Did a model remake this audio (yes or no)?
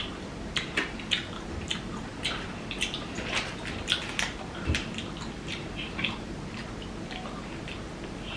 no